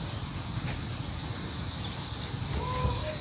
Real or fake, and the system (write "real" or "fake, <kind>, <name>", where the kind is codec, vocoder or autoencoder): real